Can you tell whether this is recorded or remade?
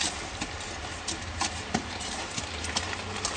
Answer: recorded